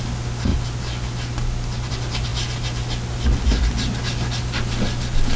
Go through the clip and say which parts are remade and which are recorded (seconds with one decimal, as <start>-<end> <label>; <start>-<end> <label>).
0.0-5.4 recorded